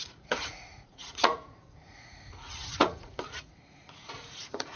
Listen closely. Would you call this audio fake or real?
fake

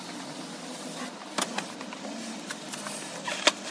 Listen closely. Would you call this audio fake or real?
real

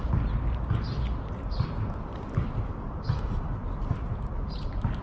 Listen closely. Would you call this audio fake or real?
real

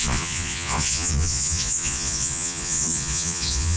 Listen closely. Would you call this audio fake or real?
fake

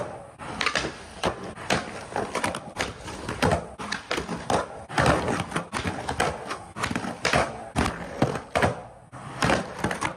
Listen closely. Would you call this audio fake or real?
real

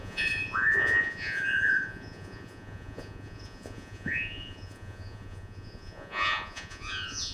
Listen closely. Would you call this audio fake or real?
fake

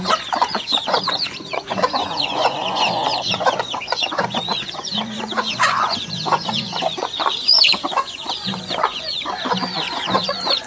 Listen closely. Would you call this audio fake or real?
fake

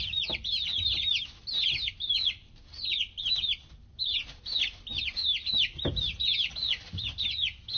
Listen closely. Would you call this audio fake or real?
real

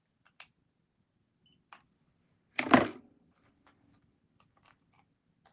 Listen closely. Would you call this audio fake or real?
real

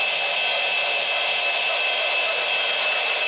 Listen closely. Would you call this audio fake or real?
real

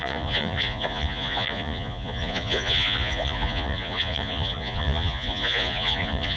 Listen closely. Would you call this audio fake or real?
fake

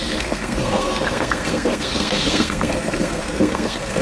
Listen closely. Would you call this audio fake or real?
fake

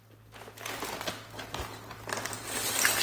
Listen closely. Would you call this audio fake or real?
real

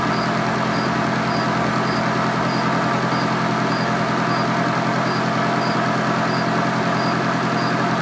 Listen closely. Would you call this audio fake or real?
real